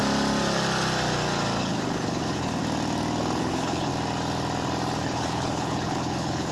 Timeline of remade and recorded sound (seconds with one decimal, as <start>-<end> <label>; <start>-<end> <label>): 0.0-1.6 recorded; 1.6-2.6 remade; 2.6-3.4 recorded; 3.4-3.9 remade; 3.9-5.0 recorded; 5.0-6.5 remade